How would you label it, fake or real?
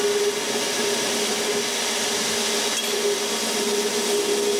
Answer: real